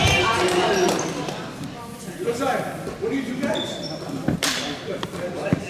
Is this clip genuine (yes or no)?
yes